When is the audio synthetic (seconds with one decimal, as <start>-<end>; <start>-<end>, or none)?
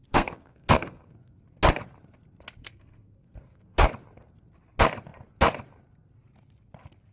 0.0-1.4; 2.6-3.9